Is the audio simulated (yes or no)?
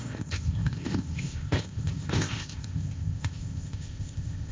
yes